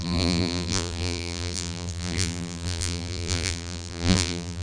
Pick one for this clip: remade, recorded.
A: remade